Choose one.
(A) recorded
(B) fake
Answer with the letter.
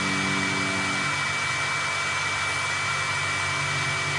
A